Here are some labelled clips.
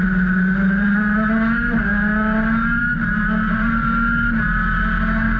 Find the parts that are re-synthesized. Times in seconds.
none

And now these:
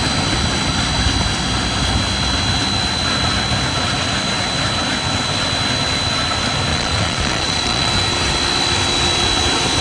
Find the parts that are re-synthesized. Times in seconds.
6.7-7.9 (vocoder, Vocos)